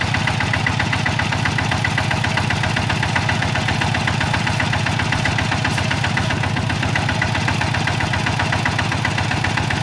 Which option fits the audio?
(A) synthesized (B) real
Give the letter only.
B